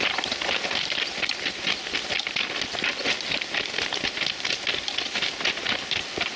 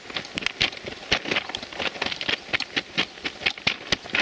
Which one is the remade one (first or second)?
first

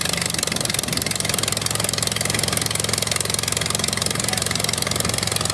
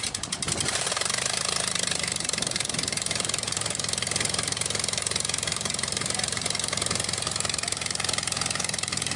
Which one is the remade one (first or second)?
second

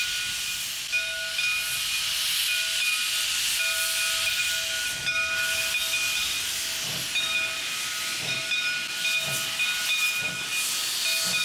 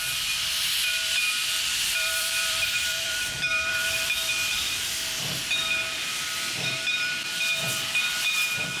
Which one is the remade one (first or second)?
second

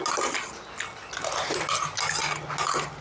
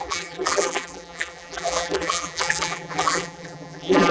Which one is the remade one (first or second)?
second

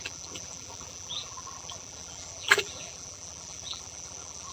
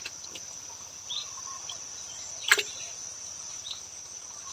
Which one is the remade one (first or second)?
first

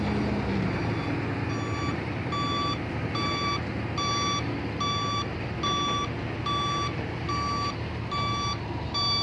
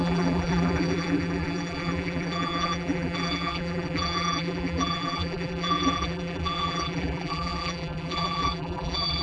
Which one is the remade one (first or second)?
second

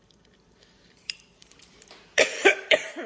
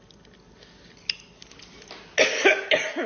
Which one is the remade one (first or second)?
first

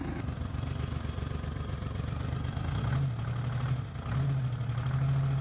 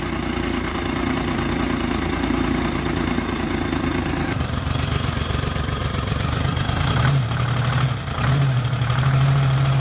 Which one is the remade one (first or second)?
second